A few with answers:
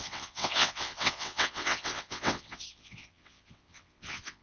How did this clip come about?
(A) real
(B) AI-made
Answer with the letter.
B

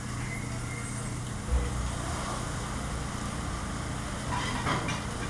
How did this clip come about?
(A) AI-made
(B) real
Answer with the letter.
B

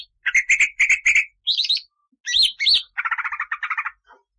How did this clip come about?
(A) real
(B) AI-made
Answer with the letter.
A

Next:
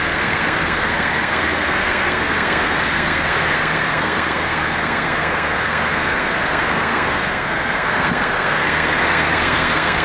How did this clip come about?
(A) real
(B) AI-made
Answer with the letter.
B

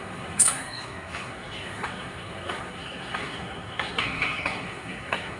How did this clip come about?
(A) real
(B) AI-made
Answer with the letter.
B